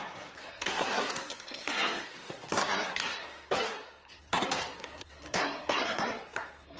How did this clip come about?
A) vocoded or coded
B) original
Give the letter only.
A